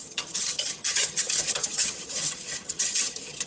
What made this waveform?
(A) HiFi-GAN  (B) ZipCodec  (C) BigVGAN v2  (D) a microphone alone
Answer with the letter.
A